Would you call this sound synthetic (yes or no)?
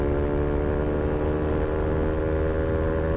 no